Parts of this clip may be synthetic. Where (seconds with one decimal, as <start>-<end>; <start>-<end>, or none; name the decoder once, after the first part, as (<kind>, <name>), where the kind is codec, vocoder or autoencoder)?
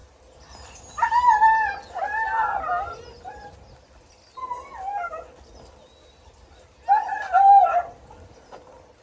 none